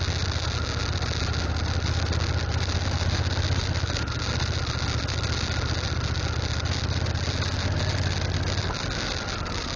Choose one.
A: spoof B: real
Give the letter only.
B